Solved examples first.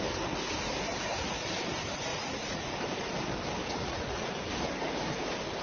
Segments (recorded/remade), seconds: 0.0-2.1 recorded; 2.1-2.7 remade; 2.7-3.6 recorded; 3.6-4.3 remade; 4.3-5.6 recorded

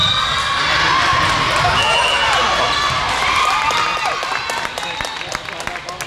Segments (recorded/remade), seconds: 0.0-6.1 recorded

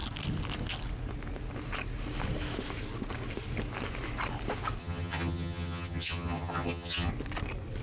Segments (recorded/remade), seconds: 0.0-4.8 recorded; 4.8-7.1 remade; 7.1-7.8 recorded

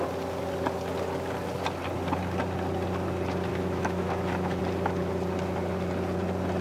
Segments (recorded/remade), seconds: 0.0-3.5 recorded; 3.5-4.6 remade; 4.6-6.6 recorded